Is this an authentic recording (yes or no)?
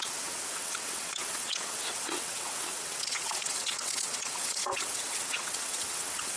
no